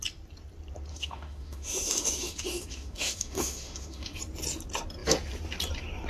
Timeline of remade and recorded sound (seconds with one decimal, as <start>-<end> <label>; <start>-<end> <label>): 0.0-0.9 recorded; 0.9-4.2 remade; 4.2-6.1 recorded